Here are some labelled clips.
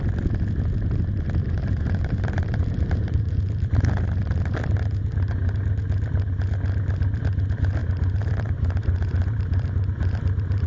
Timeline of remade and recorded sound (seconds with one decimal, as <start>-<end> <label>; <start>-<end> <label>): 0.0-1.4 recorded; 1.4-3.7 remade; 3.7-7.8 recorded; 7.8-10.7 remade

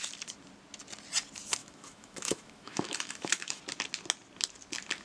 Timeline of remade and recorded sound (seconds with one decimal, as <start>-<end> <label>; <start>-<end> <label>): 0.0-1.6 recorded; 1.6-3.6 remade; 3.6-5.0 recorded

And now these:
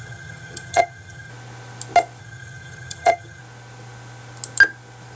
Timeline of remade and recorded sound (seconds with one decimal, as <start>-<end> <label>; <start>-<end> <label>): 0.0-1.3 remade; 1.3-2.2 recorded; 2.2-3.4 remade; 3.4-5.2 recorded

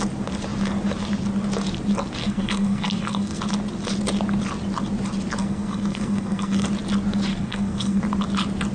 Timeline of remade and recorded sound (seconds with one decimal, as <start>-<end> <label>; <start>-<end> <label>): 0.0-2.2 recorded; 2.2-3.4 remade; 3.4-5.4 recorded; 5.4-6.7 remade; 6.7-7.3 recorded; 7.3-8.0 remade; 8.0-8.7 recorded